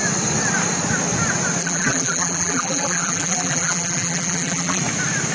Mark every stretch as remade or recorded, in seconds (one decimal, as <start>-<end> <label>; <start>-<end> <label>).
0.0-1.6 recorded; 1.6-4.8 remade; 4.8-5.3 recorded